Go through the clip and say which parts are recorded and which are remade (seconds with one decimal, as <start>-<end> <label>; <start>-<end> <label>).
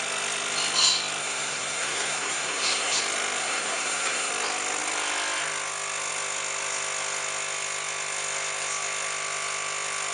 0.0-1.2 recorded; 1.2-3.0 remade; 3.0-3.4 recorded; 3.4-4.3 remade; 4.3-10.1 recorded